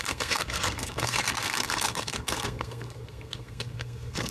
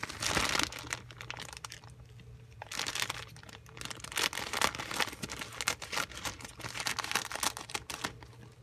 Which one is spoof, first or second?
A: first